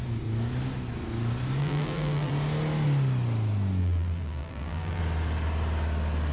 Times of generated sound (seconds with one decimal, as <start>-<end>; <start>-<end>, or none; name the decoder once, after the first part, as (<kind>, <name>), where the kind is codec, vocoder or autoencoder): 1.6-2.3 (vocoder, BigVGAN v2); 3.8-5.0